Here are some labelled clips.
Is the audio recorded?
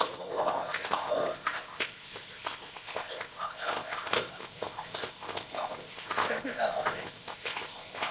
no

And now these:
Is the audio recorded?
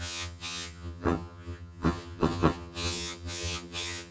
no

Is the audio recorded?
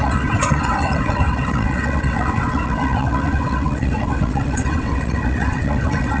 no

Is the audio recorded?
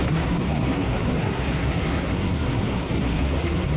no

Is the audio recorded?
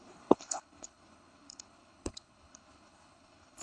no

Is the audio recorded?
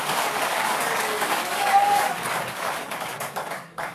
no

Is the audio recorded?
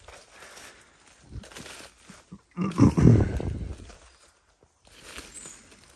yes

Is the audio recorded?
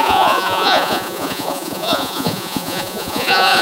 no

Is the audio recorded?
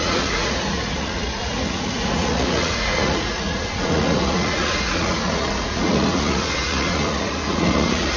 no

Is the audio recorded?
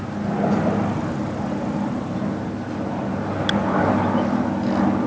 yes